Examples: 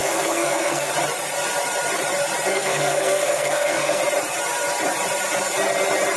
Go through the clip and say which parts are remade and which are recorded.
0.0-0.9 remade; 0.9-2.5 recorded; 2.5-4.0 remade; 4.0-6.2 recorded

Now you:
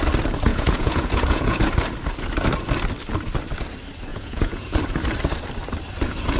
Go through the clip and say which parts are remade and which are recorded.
0.0-0.5 recorded; 0.5-1.6 remade; 1.6-4.1 recorded; 4.1-4.8 remade; 4.8-6.4 recorded

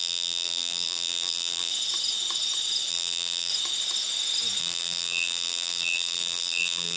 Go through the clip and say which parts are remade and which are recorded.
0.0-1.7 remade; 1.7-2.9 recorded; 2.9-3.5 remade; 3.5-4.6 recorded; 4.6-7.0 remade

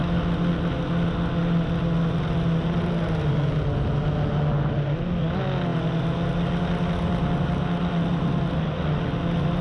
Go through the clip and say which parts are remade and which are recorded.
0.0-9.6 recorded

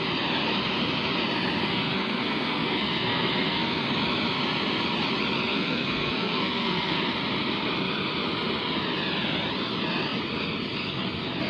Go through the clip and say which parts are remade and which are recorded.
0.0-1.6 recorded; 1.6-3.9 remade; 3.9-5.5 recorded; 5.5-7.0 remade; 7.0-11.5 recorded

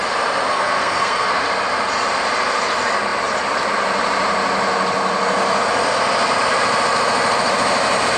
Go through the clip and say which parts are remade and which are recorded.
0.0-0.5 recorded; 0.5-1.3 remade; 1.3-8.2 recorded